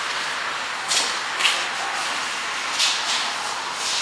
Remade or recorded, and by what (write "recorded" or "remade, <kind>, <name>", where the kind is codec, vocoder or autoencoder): recorded